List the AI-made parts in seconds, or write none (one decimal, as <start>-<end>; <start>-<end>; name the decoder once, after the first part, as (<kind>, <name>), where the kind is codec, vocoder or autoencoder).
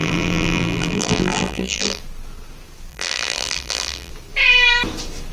0.0-2.0 (vocoder, BigVGAN v2); 2.9-4.1